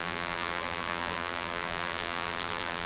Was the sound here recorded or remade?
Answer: remade